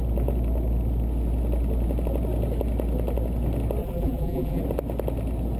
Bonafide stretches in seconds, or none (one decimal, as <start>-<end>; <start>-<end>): 0.0-3.8; 4.6-5.6

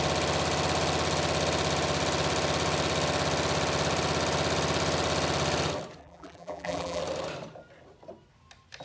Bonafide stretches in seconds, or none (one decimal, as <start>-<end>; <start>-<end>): 0.0-6.0; 7.0-8.8

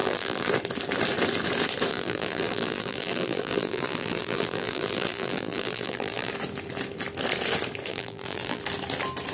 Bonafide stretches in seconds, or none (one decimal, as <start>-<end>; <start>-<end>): 0.5-1.9; 6.3-7.9; 8.6-9.3